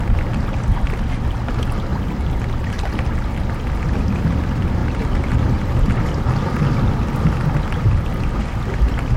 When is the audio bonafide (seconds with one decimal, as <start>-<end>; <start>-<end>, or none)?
0.0-4.8; 5.7-9.2